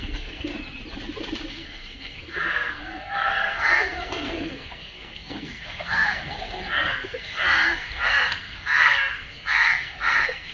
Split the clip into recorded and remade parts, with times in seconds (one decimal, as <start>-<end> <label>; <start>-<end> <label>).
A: 0.0-0.5 remade; 0.5-1.5 recorded; 1.5-10.5 remade